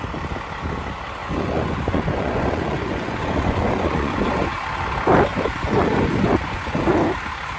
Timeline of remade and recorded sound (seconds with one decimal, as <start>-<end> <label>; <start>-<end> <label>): 0.0-1.2 recorded; 1.2-4.5 remade; 4.5-5.3 recorded; 5.3-6.8 remade; 6.8-7.6 recorded